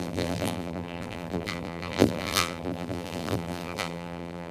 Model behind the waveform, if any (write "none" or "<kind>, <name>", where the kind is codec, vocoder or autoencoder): vocoder, BigVGAN v2